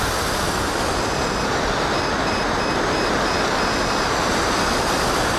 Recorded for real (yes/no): yes